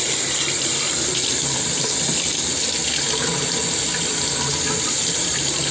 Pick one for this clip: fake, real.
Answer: real